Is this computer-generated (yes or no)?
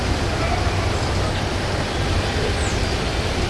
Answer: no